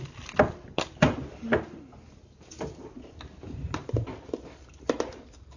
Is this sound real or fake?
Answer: real